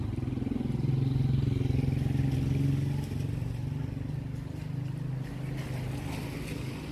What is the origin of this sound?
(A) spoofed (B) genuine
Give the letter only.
B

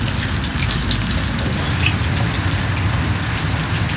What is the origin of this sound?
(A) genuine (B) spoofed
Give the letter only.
A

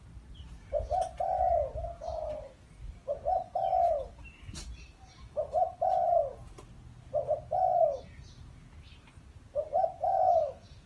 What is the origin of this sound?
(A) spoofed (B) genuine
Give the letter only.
B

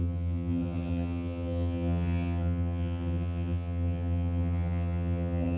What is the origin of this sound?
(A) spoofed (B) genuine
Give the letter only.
A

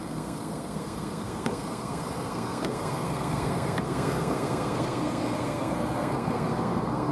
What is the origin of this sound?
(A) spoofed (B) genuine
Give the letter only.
A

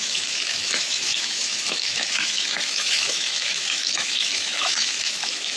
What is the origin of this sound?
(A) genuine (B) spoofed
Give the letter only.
B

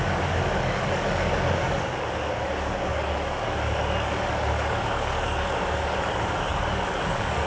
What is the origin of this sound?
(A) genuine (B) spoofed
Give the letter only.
B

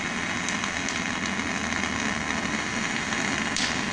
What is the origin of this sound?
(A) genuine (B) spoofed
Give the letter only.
A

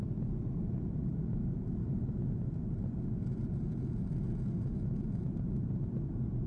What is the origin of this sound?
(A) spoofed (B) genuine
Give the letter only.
B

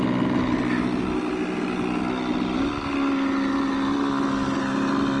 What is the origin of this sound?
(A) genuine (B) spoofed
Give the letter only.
A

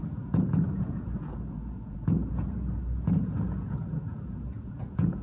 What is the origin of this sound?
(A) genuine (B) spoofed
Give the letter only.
B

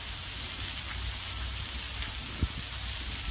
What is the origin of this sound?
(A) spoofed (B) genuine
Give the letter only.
B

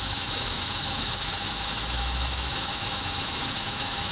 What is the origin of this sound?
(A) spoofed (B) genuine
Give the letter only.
A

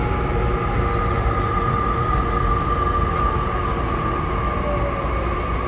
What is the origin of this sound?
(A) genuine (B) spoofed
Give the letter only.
A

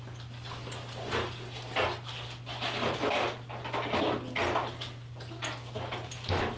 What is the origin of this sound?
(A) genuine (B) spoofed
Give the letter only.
A